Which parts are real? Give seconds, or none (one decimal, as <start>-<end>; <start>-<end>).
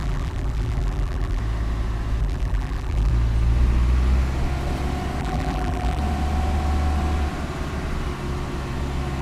1.4-2.2; 3.1-5.2; 6.0-9.2